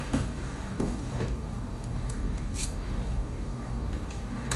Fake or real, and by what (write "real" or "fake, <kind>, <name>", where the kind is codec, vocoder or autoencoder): fake, codec, DAC